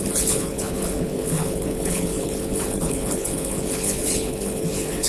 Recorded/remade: remade